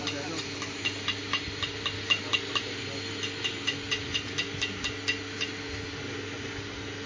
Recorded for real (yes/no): yes